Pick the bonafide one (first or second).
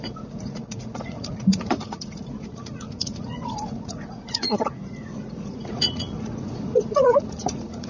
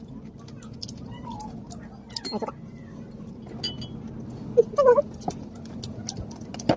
second